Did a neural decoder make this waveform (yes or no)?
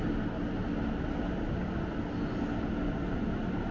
no